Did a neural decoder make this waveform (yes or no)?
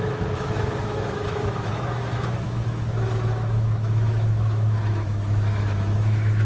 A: yes